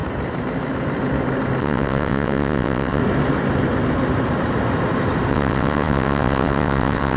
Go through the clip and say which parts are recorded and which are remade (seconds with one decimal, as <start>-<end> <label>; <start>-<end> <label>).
0.0-1.6 recorded; 1.6-3.0 remade; 3.0-5.3 recorded; 5.3-7.2 remade